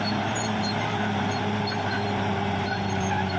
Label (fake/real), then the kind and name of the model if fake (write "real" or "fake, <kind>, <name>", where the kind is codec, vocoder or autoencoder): fake, vocoder, BigVGAN v2